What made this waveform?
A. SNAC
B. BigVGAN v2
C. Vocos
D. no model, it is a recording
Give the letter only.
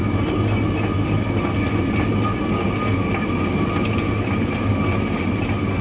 D